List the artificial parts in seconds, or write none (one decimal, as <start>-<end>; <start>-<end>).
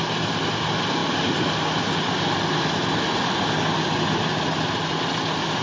none